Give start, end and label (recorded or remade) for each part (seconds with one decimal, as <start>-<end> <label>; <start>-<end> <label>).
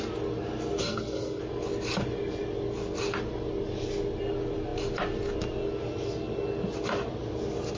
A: 0.0-0.8 recorded; 0.8-1.4 remade; 1.4-7.8 recorded